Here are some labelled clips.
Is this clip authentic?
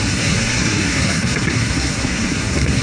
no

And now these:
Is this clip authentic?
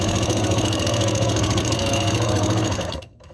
no